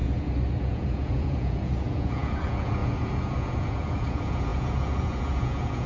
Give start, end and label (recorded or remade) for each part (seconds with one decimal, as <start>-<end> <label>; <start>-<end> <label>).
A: 0.0-0.6 recorded; 0.6-5.9 remade